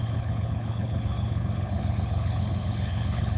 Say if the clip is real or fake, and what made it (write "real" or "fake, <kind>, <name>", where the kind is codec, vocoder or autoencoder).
fake, codec, HILCodec